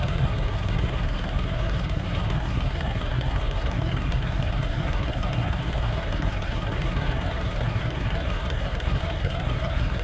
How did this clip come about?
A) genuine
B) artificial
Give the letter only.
B